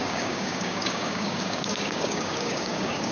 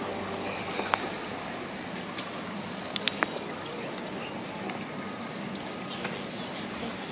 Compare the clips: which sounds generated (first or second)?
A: first